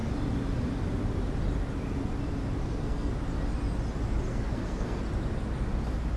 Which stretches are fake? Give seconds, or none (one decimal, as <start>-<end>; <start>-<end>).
2.6-3.1; 4.3-5.0